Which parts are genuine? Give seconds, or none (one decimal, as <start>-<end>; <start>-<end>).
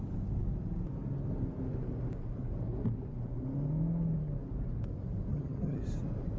0.0-5.3; 5.8-6.4